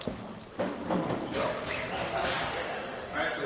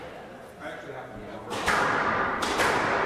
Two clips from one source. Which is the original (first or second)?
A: second